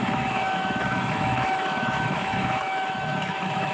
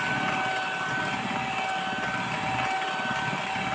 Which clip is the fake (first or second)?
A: first